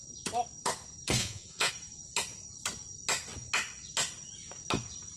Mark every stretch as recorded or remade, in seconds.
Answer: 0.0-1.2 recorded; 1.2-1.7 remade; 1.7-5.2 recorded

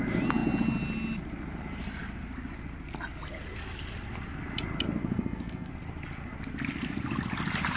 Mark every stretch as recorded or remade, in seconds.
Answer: 0.0-5.0 recorded; 5.0-5.7 remade; 5.7-7.8 recorded

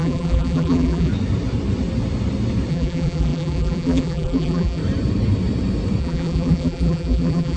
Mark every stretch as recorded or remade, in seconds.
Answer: 0.0-1.1 remade; 1.1-2.7 recorded; 2.7-4.8 remade; 4.8-6.0 recorded; 6.0-7.6 remade

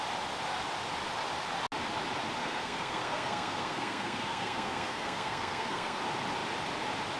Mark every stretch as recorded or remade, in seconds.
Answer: 0.0-2.4 recorded; 2.4-6.0 remade; 6.0-7.2 recorded

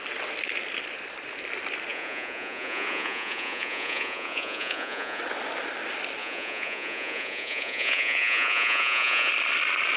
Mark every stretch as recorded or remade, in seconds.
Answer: 0.0-1.9 recorded; 1.9-5.2 remade; 5.2-6.2 recorded; 6.2-9.3 remade; 9.3-10.0 recorded

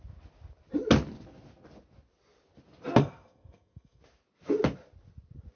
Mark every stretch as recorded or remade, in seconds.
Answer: 0.0-3.0 recorded; 3.0-4.0 remade; 4.0-5.5 recorded